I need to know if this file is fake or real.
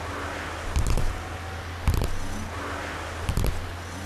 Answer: real